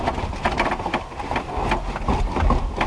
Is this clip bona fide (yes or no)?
yes